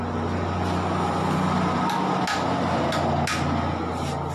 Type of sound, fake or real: real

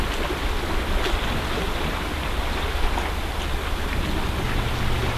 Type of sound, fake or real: real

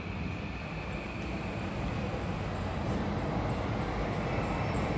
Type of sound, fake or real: real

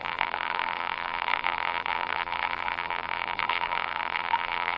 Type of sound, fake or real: fake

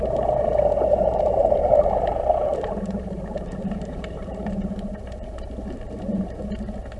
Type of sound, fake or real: fake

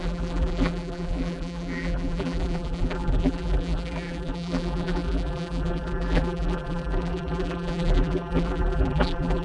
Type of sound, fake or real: fake